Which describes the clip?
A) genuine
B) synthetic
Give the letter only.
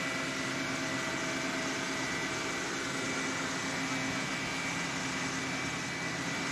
A